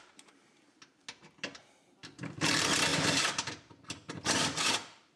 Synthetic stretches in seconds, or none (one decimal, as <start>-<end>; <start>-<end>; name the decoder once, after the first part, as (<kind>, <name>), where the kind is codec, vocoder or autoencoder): 0.0-1.0 (vocoder, BigVGAN v2); 1.6-5.2